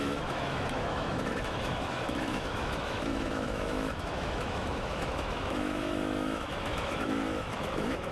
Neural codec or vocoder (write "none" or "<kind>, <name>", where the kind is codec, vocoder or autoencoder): autoencoder, DAC-VAE